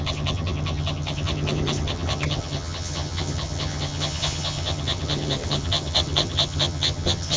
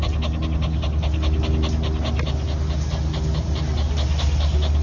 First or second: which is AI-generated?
first